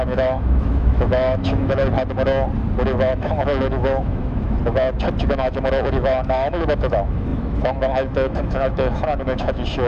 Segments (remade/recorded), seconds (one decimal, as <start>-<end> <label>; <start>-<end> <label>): 0.0-1.8 remade; 1.8-2.9 recorded; 2.9-4.6 remade; 4.6-5.2 recorded; 5.2-9.9 remade